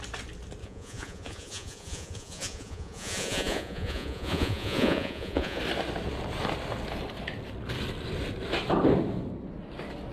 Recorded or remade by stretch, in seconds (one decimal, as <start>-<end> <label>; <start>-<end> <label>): 0.0-0.6 recorded; 0.6-5.6 remade; 5.6-10.1 recorded